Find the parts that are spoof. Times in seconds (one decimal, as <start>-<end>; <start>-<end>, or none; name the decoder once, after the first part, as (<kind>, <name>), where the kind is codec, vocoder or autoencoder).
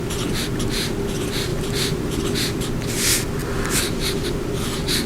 1.5-2.6 (vocoder, BigVGAN v2); 3.4-5.1